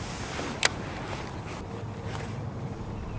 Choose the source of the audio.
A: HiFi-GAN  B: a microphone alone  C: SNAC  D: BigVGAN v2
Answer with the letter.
B